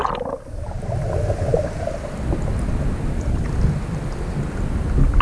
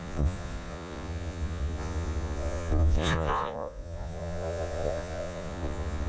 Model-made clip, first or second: second